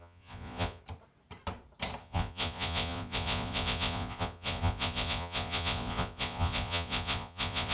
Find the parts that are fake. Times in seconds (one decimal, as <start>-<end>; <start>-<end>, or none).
0.0-0.8; 2.0-7.7

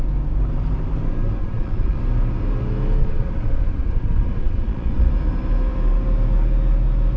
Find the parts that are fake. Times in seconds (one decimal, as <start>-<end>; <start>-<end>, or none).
1.4-2.0; 3.0-5.1

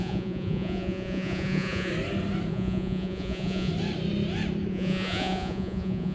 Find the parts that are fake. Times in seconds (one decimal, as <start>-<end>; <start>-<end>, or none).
0.0-1.9; 2.5-3.7; 4.7-6.1

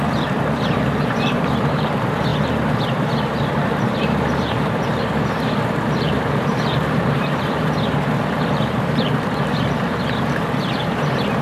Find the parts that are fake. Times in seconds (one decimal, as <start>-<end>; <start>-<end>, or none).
0.0-11.4

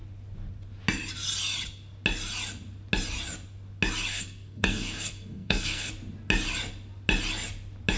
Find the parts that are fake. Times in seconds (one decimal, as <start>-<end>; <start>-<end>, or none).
4.1-5.9

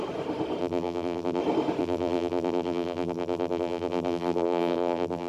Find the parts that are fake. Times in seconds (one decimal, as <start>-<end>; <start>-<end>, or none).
0.6-1.4; 1.8-5.3

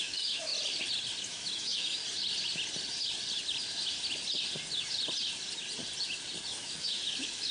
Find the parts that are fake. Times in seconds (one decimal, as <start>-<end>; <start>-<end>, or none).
0.0-0.5; 1.2-2.0; 6.5-7.5